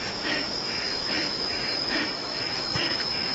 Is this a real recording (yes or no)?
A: no